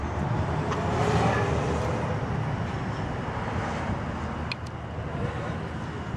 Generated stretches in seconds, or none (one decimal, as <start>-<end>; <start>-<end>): 0.0-0.7